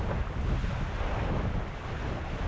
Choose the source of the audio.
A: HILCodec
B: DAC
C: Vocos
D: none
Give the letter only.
D